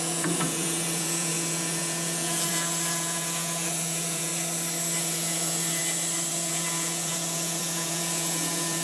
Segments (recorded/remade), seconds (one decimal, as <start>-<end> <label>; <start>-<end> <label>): 0.0-4.3 remade; 4.3-5.0 recorded; 5.0-5.8 remade; 5.8-6.3 recorded; 6.3-8.8 remade